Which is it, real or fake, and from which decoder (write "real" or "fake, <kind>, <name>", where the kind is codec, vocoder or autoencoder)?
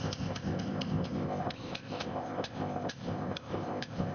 fake, codec, ZipCodec